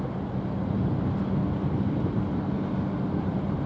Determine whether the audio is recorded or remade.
recorded